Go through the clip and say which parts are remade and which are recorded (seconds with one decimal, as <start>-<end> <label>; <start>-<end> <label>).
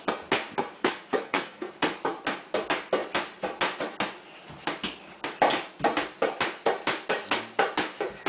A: 0.0-0.8 recorded; 0.8-1.7 remade; 1.7-8.3 recorded